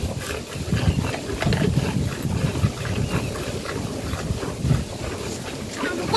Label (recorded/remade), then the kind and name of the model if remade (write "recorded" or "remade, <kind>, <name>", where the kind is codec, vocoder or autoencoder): recorded